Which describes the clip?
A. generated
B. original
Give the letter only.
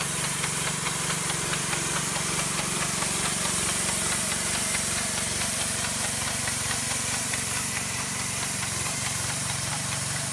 A